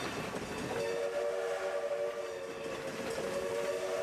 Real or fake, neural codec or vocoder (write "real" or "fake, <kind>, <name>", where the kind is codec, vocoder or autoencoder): real